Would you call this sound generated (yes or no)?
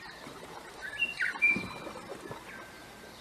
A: no